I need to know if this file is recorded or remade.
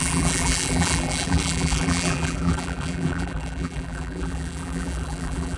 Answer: remade